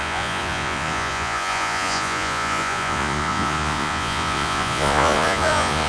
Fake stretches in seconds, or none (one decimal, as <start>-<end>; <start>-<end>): 0.0-5.9